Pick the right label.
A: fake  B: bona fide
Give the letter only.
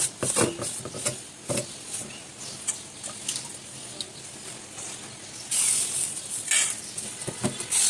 B